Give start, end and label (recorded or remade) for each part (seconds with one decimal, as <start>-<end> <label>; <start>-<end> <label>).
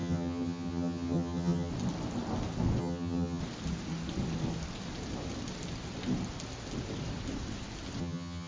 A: 0.0-1.7 remade; 1.7-2.8 recorded; 2.8-3.4 remade; 3.4-8.0 recorded; 8.0-8.5 remade